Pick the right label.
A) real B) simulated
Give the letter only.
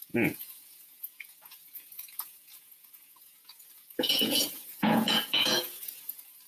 B